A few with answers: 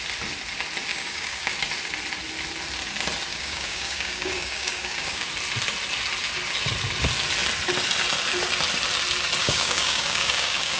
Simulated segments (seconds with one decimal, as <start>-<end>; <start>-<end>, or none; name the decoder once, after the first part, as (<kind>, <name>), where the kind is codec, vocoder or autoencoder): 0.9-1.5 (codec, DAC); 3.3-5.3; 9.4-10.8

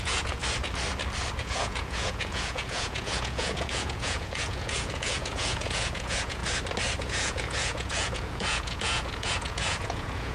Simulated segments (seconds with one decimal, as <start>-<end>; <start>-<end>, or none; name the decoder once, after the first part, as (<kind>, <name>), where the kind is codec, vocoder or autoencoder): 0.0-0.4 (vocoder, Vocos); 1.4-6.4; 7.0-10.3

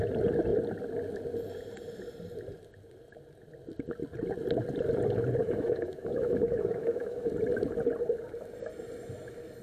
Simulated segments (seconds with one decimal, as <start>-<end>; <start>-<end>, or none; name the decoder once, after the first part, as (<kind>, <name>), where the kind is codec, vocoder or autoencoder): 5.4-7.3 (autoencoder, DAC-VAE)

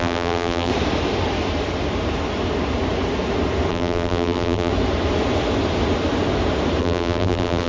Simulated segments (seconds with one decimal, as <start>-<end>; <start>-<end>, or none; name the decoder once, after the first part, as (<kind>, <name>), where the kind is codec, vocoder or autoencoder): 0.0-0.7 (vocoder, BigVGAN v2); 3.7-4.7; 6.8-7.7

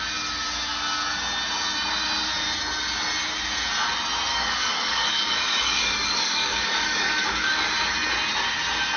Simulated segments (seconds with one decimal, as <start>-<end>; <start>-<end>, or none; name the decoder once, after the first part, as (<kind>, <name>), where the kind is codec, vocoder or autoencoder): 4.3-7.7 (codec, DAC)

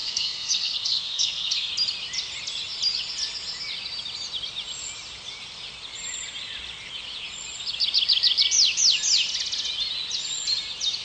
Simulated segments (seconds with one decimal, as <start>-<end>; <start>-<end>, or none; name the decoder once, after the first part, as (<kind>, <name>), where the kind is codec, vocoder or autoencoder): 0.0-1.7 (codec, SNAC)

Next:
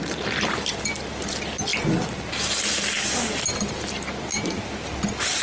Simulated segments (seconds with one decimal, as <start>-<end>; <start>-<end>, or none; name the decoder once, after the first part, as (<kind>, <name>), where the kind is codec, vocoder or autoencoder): none